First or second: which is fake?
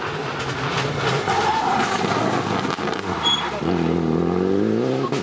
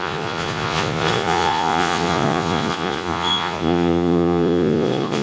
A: second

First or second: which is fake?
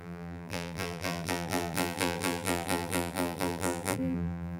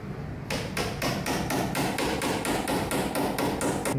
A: first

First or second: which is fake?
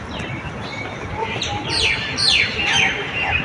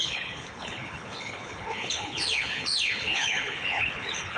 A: second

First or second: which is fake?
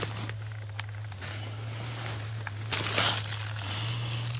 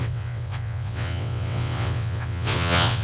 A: second